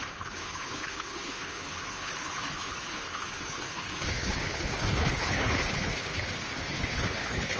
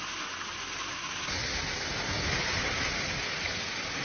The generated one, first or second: first